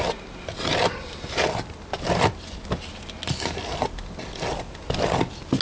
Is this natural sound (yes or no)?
yes